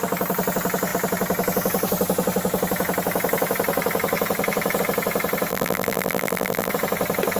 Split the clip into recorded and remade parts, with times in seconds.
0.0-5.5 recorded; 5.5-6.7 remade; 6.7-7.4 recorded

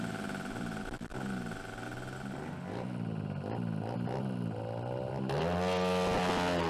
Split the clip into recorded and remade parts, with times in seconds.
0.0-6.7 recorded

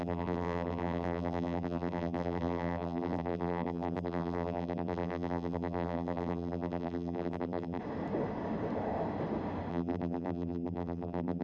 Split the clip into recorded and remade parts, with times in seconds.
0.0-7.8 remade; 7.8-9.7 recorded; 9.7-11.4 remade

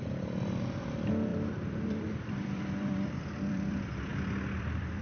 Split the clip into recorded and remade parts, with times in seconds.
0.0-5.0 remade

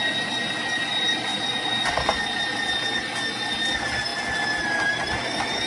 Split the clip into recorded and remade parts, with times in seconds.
0.0-5.7 recorded